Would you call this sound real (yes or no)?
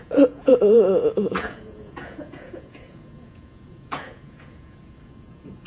no